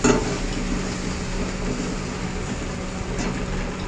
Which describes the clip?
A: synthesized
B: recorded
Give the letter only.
B